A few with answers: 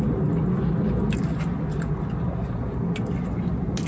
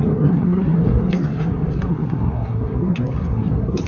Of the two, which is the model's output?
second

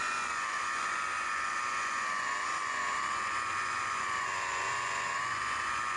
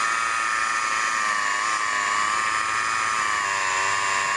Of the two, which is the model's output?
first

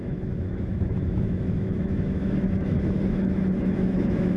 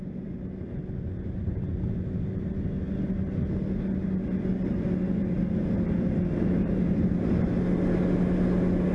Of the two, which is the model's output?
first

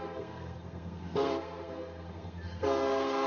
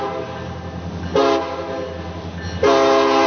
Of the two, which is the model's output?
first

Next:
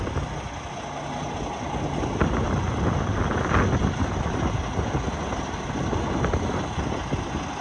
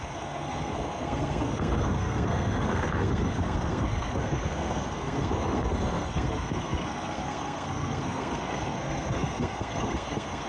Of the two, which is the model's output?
second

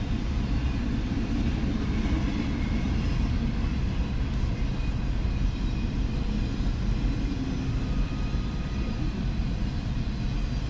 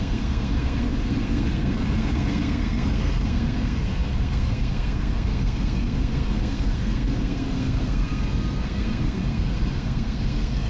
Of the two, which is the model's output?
second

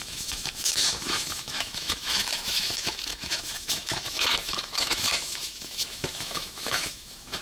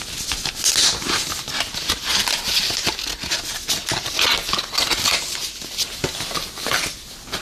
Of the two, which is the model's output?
first